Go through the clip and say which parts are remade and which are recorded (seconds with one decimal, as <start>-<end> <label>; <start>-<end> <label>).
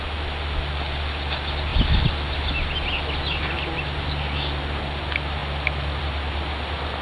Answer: 0.0-7.0 recorded